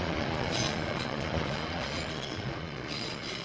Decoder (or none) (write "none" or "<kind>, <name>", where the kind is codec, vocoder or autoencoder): vocoder, Vocos